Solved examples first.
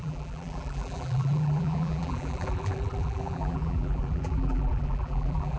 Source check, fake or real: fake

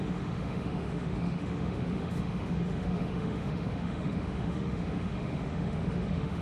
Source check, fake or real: fake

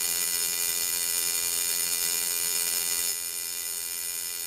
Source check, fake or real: fake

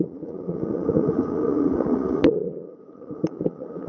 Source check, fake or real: fake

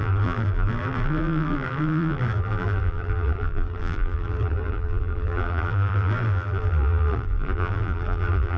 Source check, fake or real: fake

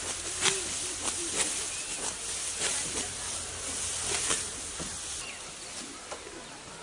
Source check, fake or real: real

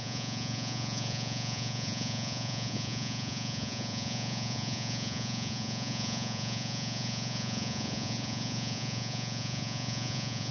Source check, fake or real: fake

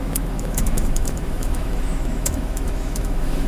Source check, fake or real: fake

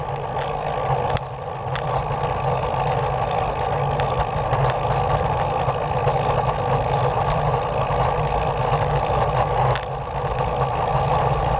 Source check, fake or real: real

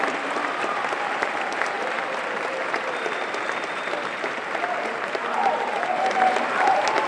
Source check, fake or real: fake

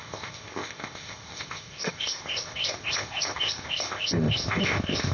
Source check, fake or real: fake